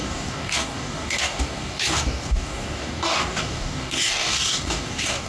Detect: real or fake fake